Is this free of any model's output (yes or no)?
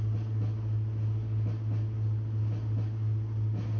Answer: yes